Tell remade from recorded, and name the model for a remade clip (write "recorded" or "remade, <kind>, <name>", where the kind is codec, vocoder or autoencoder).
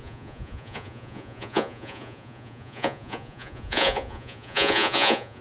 remade, vocoder, Vocos